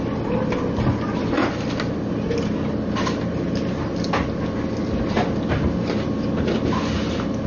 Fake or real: real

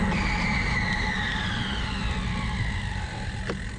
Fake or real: real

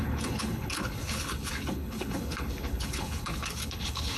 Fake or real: fake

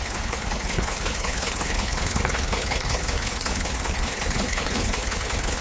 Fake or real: fake